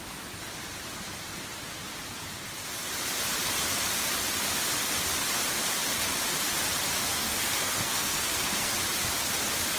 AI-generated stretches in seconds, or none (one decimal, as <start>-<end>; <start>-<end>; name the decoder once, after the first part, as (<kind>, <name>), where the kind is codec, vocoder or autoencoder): 7.1-8.7 (codec, SNAC)